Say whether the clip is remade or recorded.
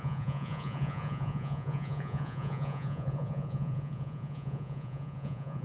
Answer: remade